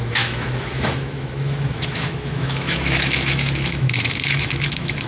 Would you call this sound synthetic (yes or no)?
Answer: yes